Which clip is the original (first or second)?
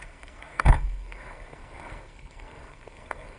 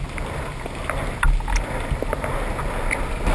second